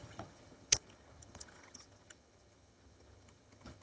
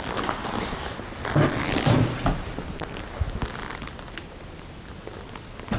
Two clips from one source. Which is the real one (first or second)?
second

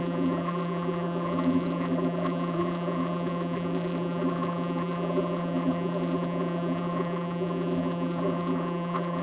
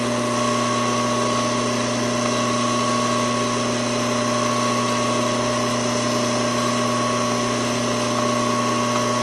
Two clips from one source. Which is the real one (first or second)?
second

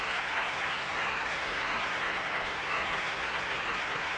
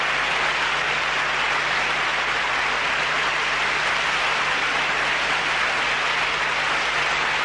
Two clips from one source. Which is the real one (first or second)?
second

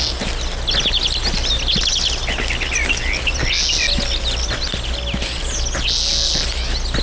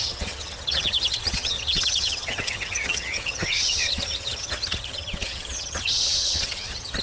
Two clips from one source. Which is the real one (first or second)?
first